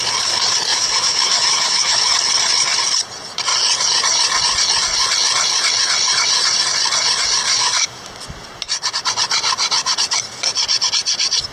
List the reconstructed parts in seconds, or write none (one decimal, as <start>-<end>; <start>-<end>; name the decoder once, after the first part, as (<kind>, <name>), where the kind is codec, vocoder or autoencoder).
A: 0.7-2.1 (autoencoder, DAC-VAE); 7.5-8.1